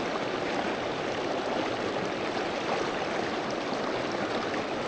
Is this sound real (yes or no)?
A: yes